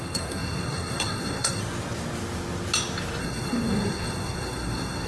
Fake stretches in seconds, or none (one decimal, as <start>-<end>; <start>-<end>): 0.0-1.6; 3.2-5.1